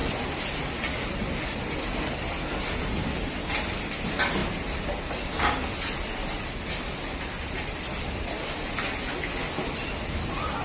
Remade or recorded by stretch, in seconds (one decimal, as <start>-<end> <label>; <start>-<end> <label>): 0.0-10.6 recorded